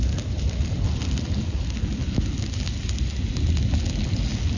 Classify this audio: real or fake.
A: real